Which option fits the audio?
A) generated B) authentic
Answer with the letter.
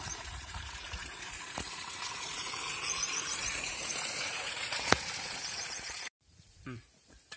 A